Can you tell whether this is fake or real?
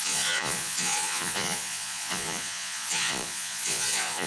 fake